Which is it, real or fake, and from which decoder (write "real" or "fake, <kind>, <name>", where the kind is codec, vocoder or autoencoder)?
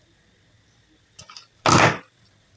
real